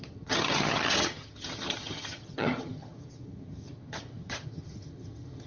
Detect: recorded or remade remade